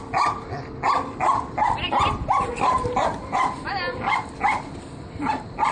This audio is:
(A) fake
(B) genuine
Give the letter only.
B